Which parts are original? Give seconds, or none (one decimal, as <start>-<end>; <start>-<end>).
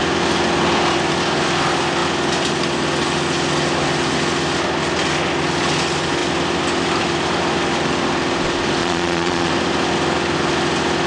0.0-8.8; 9.5-11.1